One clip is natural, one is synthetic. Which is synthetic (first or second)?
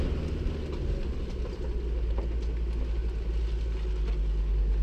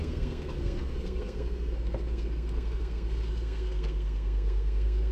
second